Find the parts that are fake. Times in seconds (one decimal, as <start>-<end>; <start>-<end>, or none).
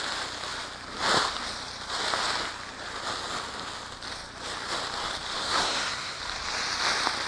5.4-6.2